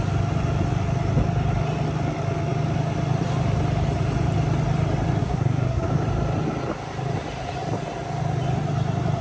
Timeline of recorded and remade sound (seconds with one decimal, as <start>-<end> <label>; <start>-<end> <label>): 0.0-5.2 recorded; 5.2-5.9 remade; 5.9-9.2 recorded